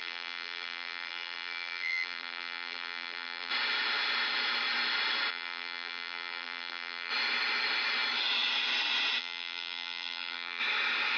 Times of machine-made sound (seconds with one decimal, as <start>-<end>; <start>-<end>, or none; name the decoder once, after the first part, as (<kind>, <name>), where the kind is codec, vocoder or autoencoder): 0.0-3.5 (vocoder, BigVGAN v2); 5.3-7.1; 9.2-10.6